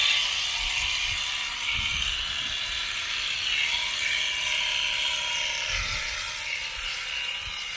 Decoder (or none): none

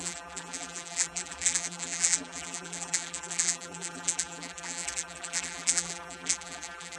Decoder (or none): vocoder, BigVGAN v2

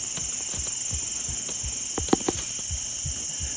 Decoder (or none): none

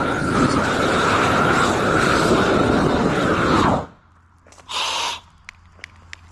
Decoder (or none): none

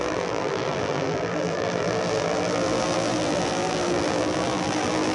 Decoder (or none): vocoder, BigVGAN v2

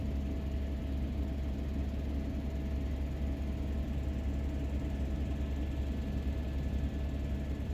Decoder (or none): none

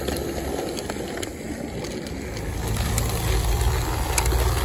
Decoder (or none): none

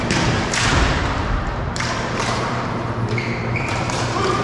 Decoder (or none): vocoder, BigVGAN v2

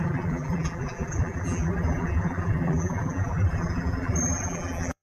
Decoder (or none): vocoder, BigVGAN v2